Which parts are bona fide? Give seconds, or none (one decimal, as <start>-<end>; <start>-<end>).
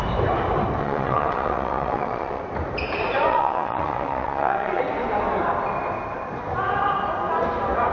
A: 0.0-0.8; 2.4-3.3; 4.8-7.9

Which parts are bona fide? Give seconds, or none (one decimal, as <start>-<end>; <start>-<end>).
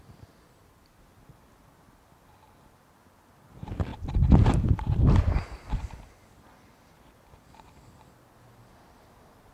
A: 0.0-9.5